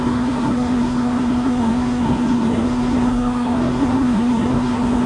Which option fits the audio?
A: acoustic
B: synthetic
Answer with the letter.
B